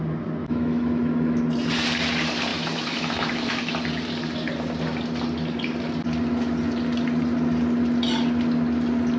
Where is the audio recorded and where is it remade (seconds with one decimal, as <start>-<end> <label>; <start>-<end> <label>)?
0.0-0.4 recorded; 0.4-1.4 remade; 1.4-2.5 recorded; 2.5-3.7 remade; 3.7-9.2 recorded